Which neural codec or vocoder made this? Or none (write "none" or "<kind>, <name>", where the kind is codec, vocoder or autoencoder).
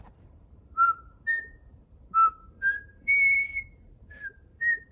vocoder, BigVGAN v2